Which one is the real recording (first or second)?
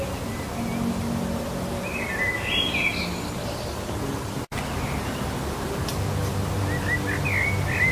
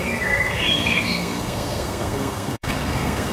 first